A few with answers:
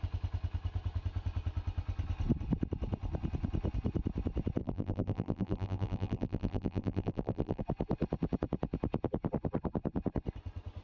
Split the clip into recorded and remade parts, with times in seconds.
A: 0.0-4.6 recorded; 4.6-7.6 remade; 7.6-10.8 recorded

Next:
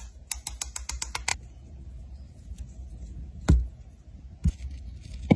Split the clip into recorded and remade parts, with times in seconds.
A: 0.0-5.4 recorded

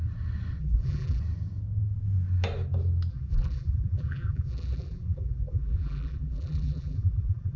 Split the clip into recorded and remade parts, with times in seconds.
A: 0.0-0.6 recorded; 0.6-1.2 remade; 1.2-3.1 recorded; 3.1-7.6 remade

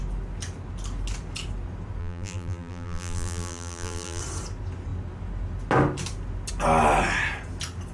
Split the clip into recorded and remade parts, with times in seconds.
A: 0.0-2.0 recorded; 2.0-4.2 remade; 4.2-7.9 recorded

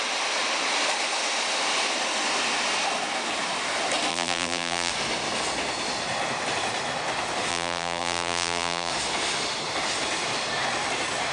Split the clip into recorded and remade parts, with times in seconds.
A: 0.0-4.1 recorded; 4.1-4.9 remade; 4.9-7.5 recorded; 7.5-8.9 remade; 8.9-11.3 recorded